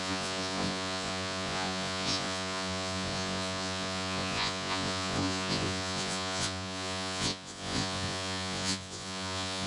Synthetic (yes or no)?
yes